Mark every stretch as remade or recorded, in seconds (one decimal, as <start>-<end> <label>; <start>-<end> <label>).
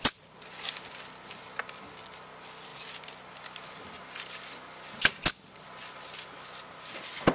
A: 0.0-7.3 recorded